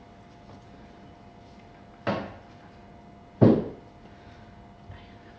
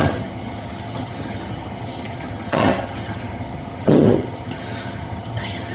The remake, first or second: second